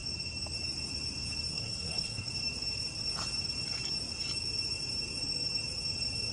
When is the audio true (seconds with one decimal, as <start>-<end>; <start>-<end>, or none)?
0.0-1.5; 2.3-6.3